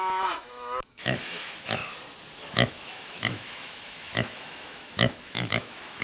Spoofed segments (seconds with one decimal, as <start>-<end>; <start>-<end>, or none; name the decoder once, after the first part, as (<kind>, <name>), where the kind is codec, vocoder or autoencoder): 0.0-1.8 (autoencoder, DAC-VAE); 2.5-6.0